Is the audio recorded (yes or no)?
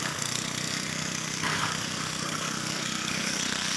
no